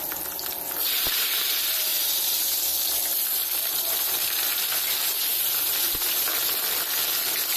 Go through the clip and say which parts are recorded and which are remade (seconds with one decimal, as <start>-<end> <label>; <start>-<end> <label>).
0.0-1.9 recorded; 1.9-4.6 remade; 4.6-5.3 recorded; 5.3-6.6 remade; 6.6-7.6 recorded